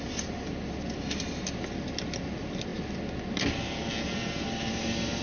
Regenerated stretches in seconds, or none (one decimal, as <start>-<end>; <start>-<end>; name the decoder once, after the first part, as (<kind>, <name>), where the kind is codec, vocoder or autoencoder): none